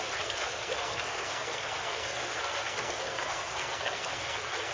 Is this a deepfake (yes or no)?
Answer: yes